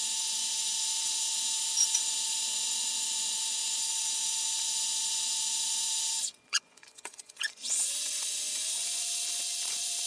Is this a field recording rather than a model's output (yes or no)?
no